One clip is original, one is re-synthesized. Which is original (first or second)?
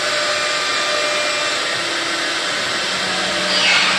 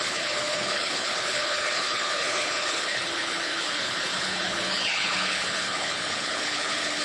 first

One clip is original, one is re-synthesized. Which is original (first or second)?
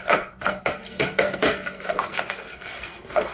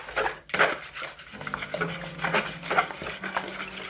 second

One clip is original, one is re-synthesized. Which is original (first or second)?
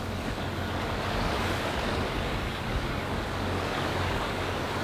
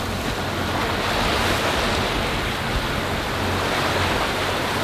second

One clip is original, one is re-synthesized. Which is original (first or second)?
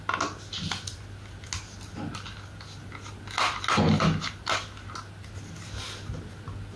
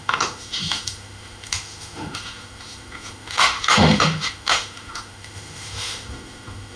first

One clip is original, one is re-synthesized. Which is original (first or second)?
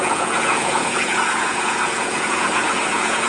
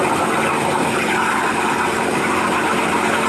second